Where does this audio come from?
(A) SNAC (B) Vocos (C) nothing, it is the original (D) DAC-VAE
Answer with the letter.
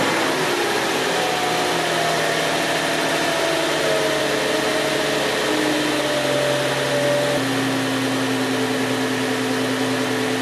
C